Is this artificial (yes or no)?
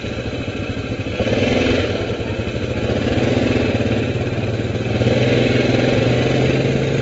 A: no